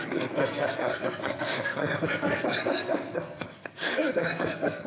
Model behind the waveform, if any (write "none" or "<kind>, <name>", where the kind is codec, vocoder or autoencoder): codec, SNAC